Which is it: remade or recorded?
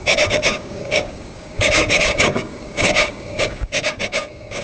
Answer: remade